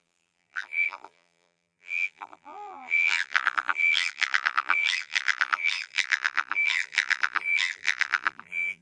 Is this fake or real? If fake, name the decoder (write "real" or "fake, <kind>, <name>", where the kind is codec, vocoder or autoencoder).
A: fake, vocoder, BigVGAN v2